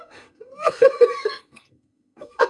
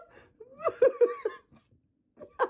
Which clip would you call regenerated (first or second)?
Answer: first